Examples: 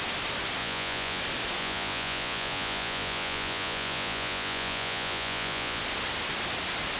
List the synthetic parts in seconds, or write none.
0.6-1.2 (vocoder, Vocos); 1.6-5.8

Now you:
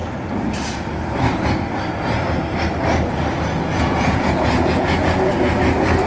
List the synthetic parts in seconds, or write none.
3.7-5.3 (vocoder, Vocos)

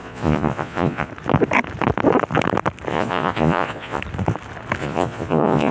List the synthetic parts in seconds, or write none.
0.0-1.1 (vocoder, Vocos); 2.9-4.0; 4.8-5.7

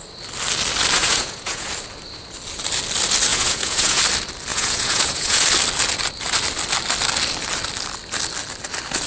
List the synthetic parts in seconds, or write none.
1.0-1.7 (vocoder, Vocos); 3.3-4.0; 4.5-5.4

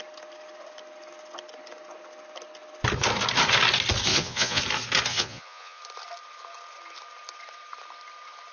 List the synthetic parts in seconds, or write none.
4.1-4.6 (vocoder, Vocos); 5.1-5.8

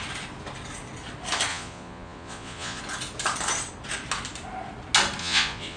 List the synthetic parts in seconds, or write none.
1.5-2.8 (vocoder, Vocos); 5.2-5.8

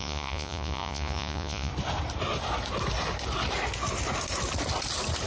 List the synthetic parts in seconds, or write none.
0.0-1.7 (vocoder, Vocos)

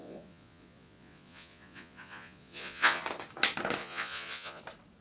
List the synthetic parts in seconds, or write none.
0.0-3.0 (vocoder, Vocos); 3.8-4.6